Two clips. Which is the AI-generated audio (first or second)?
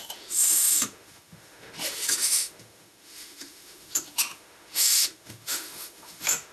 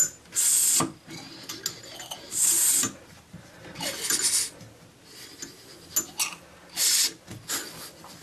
first